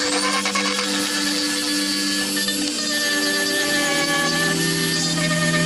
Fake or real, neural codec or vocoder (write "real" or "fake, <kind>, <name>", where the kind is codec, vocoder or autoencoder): real